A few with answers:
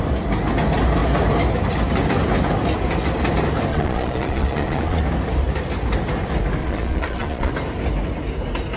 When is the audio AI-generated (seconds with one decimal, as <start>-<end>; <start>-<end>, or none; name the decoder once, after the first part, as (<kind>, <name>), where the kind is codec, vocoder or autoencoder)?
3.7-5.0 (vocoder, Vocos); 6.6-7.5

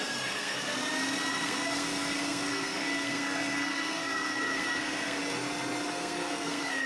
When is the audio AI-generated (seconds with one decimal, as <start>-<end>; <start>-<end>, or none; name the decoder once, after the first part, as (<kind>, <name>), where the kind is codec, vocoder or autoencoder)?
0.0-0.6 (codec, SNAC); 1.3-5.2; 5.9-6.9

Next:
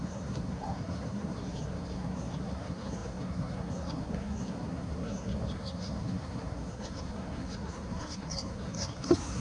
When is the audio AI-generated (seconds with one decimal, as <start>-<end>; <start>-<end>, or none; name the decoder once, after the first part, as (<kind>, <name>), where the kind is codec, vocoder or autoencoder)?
0.0-9.4 (codec, SNAC)